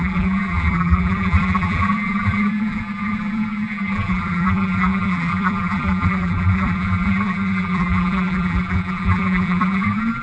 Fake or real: fake